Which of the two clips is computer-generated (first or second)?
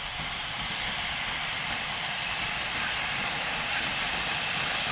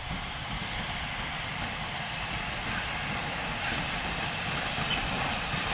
first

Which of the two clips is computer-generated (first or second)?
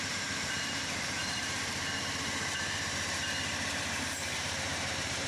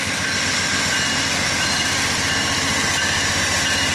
first